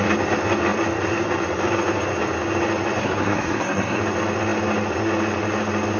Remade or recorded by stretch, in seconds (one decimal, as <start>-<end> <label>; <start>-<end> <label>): 0.0-3.0 recorded; 3.0-4.0 remade; 4.0-6.0 recorded